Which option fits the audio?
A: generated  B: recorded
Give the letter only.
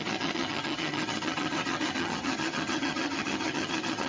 A